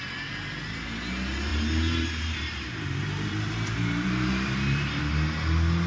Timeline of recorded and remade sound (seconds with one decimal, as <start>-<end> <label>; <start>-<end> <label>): 0.0-1.5 recorded; 1.5-5.0 remade; 5.0-5.9 recorded